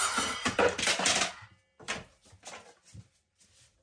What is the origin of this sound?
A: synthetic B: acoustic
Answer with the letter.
B